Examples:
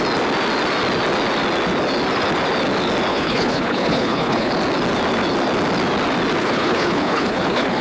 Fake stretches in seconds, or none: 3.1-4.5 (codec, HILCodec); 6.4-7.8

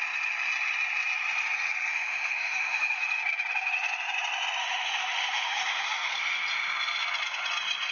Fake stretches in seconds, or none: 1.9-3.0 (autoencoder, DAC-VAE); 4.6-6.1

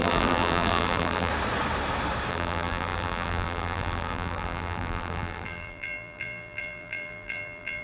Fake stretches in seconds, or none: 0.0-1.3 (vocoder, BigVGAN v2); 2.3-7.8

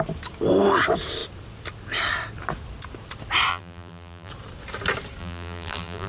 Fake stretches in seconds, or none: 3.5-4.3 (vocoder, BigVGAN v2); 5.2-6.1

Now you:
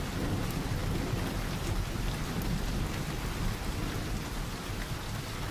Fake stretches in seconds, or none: none